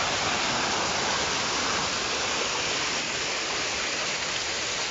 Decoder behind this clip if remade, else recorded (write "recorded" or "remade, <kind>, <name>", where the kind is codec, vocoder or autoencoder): recorded